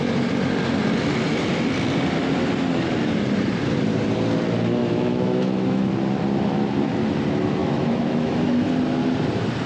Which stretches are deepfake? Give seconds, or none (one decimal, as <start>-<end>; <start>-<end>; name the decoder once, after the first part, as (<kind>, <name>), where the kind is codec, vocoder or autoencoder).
4.8-5.9 (autoencoder, DAC-VAE); 7.6-8.7